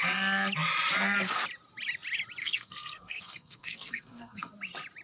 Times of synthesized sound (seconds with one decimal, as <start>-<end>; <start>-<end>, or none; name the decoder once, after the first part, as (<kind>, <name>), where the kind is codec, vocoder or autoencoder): 2.4-4.5 (codec, SNAC)